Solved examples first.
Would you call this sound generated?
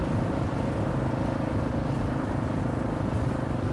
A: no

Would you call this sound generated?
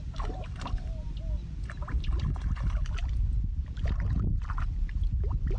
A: no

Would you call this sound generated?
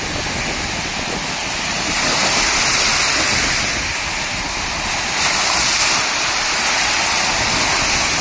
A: no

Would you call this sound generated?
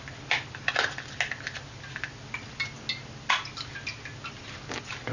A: no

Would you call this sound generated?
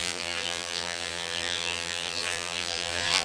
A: yes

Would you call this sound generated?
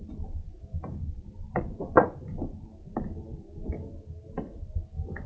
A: no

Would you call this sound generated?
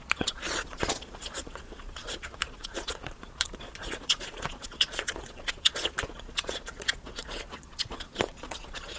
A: yes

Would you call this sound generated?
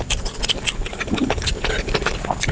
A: no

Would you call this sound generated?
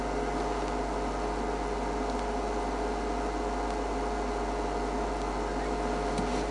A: no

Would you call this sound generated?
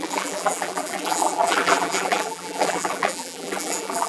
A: yes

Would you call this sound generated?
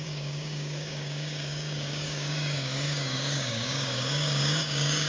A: yes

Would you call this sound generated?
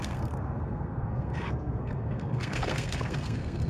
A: yes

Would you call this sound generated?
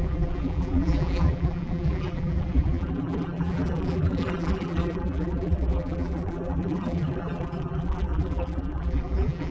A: yes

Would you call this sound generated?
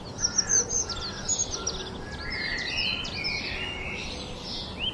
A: no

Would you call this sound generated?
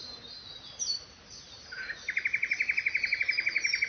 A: no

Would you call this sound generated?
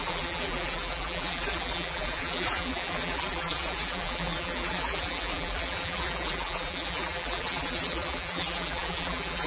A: yes